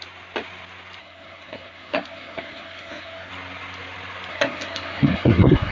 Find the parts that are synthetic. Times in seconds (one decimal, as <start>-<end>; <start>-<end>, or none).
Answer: 1.0-3.3; 4.3-5.7